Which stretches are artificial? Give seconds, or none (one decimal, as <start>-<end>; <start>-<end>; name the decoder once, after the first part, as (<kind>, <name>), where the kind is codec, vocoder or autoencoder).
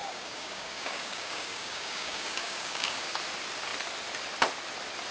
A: 0.0-3.1 (codec, DAC)